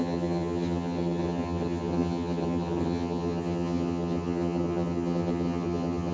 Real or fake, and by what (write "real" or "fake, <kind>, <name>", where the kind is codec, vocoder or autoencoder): fake, vocoder, HiFi-GAN